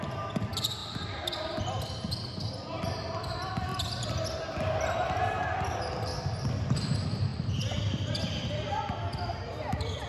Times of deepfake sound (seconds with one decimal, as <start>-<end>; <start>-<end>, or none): none